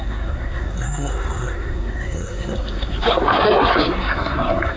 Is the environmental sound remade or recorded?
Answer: remade